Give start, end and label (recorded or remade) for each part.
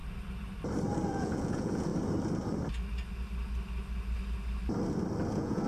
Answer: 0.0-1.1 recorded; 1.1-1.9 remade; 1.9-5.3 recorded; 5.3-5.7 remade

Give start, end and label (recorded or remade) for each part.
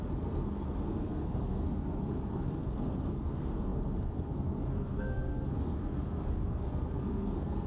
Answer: 0.0-7.7 remade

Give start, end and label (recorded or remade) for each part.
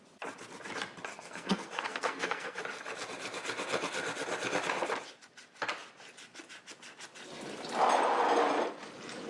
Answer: 0.0-1.1 recorded; 1.1-2.6 remade; 2.6-9.3 recorded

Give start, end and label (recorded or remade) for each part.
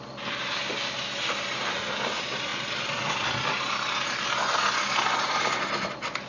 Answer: 0.0-6.3 recorded